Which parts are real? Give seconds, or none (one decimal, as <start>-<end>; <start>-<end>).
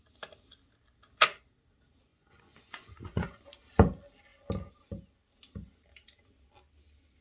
0.0-2.1; 3.4-7.2